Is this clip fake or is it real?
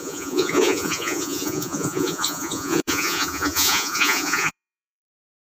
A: fake